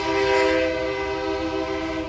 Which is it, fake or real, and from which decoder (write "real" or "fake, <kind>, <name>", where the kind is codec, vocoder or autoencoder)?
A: real